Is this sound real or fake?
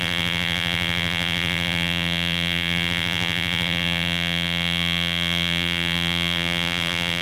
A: fake